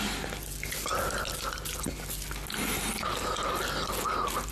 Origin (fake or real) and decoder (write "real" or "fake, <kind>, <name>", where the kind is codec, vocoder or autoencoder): real